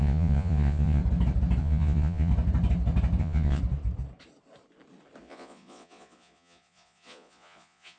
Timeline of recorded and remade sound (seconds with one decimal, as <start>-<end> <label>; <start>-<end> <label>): 0.0-1.0 remade; 1.0-1.6 recorded; 1.6-2.3 remade; 2.3-3.2 recorded; 3.2-3.6 remade; 3.6-5.2 recorded; 5.2-8.0 remade